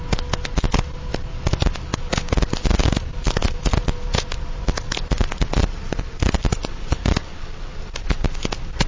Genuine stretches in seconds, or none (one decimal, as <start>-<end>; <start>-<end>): 0.0-8.9